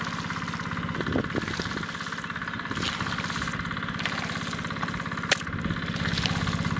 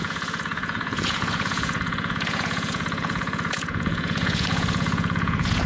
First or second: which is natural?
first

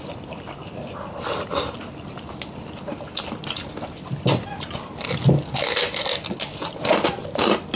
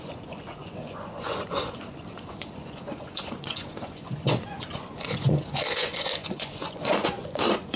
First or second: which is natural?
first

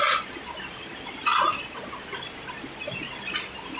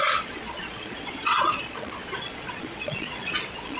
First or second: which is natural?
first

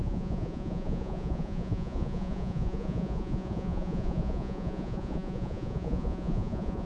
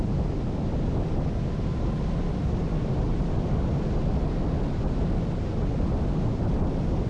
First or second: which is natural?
second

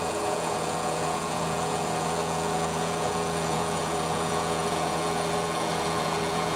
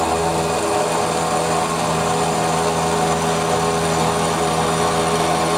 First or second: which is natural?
second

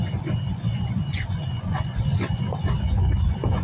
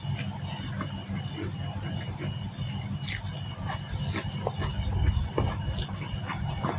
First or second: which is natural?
second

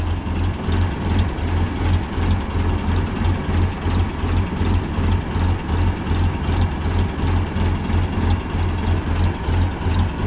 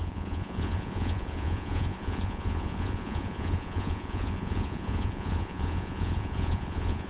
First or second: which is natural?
first